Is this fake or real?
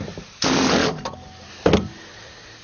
real